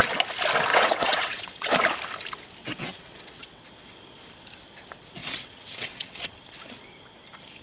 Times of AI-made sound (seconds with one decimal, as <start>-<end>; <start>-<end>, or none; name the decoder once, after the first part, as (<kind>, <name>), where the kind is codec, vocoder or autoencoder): 0.7-1.7 (vocoder, WaveNeXt); 2.6-3.6; 5.2-6.3